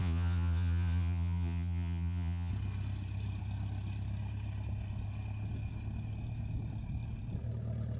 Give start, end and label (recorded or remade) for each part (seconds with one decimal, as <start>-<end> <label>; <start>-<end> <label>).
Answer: 0.0-2.5 remade; 2.5-8.0 recorded